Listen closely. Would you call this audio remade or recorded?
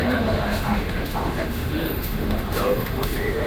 remade